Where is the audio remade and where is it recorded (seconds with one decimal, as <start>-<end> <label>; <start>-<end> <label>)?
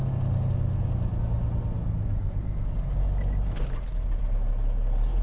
0.0-5.2 recorded